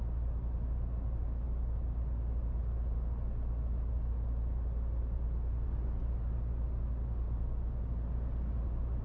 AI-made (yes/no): no